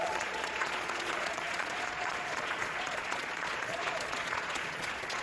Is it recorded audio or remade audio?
remade